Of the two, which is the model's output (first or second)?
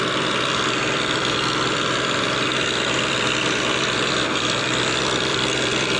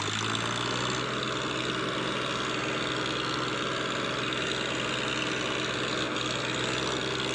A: first